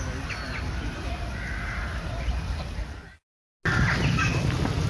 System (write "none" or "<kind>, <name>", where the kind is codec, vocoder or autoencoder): none